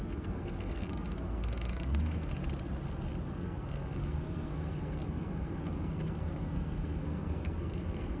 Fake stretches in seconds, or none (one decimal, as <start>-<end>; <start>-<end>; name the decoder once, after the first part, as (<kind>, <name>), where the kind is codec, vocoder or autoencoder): 0.0-2.3 (codec, SNAC); 3.3-8.2